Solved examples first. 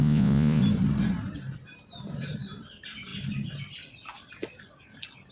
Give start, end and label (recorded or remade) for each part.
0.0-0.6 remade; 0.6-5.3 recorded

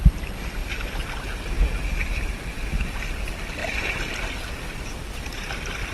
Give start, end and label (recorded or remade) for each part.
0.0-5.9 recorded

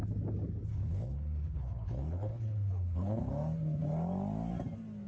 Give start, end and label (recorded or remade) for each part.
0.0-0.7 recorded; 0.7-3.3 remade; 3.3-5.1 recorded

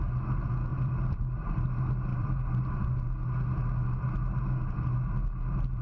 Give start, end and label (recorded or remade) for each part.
0.0-0.7 recorded; 0.7-1.7 remade; 1.7-2.1 recorded; 2.1-2.7 remade; 2.7-5.8 recorded

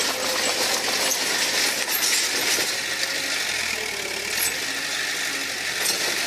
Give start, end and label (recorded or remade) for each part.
0.0-6.3 recorded